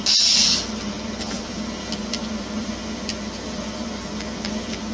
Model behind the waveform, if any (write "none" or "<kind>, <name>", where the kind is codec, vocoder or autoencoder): vocoder, BigVGAN v2